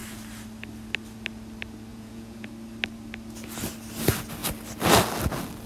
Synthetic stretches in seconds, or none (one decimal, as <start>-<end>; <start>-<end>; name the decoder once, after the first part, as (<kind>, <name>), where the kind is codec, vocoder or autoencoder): 1.9-2.5 (vocoder, Vocos)